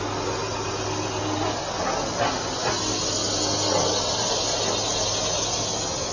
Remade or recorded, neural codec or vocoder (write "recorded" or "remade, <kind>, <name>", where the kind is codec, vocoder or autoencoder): recorded